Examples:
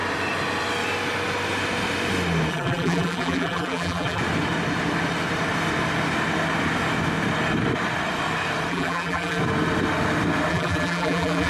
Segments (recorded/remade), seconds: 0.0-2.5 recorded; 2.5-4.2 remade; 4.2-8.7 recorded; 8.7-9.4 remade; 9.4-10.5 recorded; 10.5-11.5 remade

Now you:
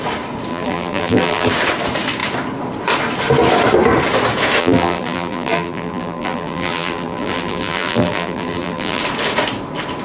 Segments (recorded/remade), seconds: 0.0-0.5 recorded; 0.5-1.5 remade; 1.5-4.6 recorded; 4.6-9.0 remade; 9.0-10.0 recorded